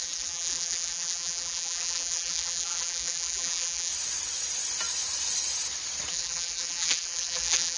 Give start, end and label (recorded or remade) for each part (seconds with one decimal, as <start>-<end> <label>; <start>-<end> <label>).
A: 0.0-3.9 remade; 3.9-6.1 recorded; 6.1-7.8 remade